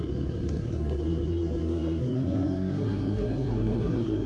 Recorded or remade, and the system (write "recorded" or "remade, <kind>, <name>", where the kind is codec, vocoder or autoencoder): remade, codec, SNAC